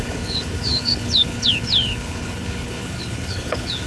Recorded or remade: remade